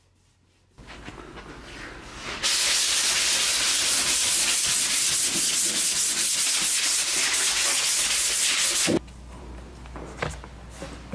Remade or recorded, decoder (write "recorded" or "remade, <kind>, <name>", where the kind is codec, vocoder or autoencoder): recorded